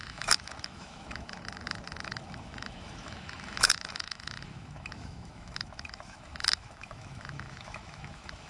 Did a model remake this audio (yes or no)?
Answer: yes